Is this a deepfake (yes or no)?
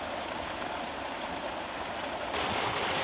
no